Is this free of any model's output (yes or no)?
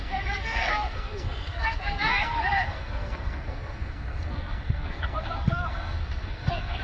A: no